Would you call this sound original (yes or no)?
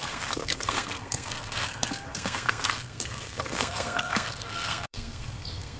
no